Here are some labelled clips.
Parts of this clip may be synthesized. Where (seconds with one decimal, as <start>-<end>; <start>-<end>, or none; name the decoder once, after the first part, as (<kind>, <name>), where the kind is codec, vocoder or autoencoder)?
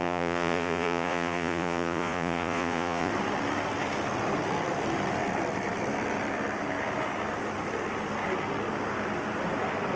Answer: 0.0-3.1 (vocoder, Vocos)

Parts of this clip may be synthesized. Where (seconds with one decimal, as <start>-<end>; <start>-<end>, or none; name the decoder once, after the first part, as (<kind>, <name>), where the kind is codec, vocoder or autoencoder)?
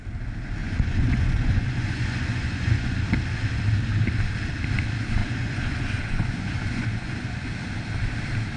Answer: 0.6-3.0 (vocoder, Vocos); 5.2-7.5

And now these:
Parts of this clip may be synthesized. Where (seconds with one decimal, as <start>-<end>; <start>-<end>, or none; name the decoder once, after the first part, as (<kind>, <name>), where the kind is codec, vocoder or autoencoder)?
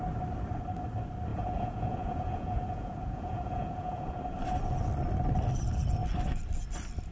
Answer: 1.3-4.2 (vocoder, Vocos)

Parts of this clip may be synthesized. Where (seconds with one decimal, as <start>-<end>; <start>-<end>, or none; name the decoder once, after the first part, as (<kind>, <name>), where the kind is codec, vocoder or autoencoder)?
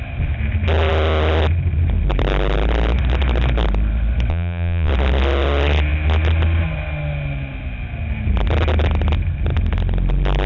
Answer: 4.3-4.9 (vocoder, Vocos)